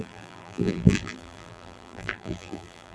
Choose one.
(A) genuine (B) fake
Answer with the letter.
B